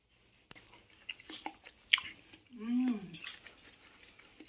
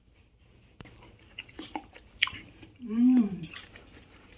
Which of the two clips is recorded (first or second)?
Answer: first